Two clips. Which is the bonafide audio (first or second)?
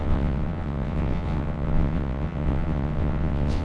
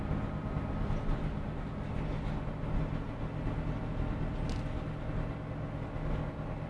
second